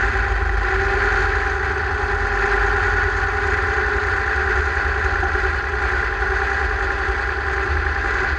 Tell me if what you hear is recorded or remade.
recorded